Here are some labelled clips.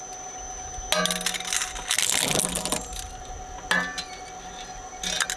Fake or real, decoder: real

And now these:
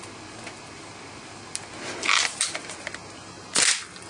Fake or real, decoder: real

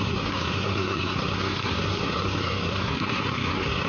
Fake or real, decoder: fake, codec, SNAC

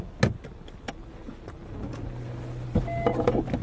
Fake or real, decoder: real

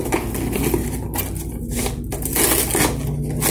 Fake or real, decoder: real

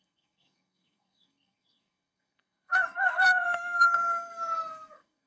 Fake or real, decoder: fake, codec, SNAC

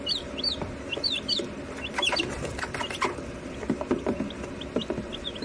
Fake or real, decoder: real